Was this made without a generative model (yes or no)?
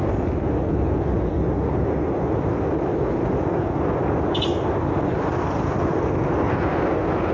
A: yes